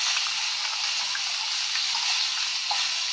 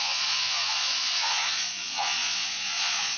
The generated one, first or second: second